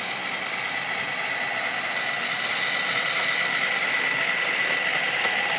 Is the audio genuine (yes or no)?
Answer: yes